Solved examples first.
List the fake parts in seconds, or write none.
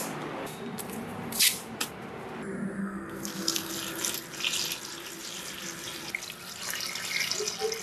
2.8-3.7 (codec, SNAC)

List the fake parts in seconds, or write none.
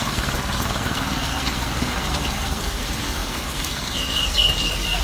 0.0-5.0 (codec, SNAC)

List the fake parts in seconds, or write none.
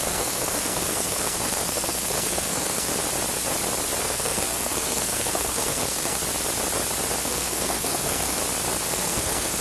0.0-2.9 (codec, SNAC); 4.0-6.2; 7.2-8.4; 8.9-9.6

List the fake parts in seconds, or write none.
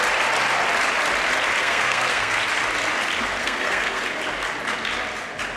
1.6-2.4 (codec, SNAC); 3.4-4.0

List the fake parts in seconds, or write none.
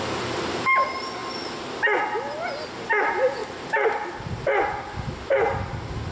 none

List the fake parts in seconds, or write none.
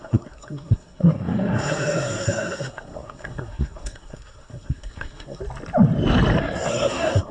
0.0-5.4 (codec, SNAC); 6.4-7.3